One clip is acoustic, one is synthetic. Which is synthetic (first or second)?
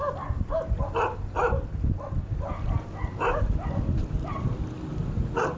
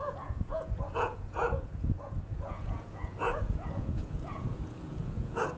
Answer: second